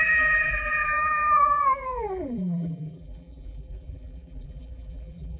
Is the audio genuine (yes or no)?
no